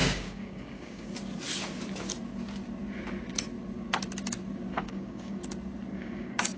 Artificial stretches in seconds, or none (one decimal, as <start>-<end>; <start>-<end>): 0.0-1.1; 4.7-5.4; 5.9-6.6